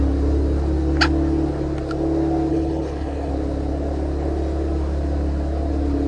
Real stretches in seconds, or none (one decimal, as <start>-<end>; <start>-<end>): 0.0-2.5; 3.3-6.1